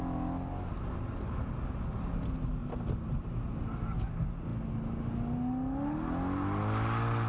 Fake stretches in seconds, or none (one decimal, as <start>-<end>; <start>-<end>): 2.6-3.5